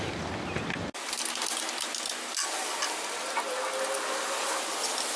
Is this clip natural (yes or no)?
yes